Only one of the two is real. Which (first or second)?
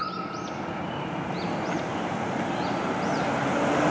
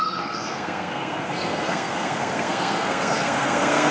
first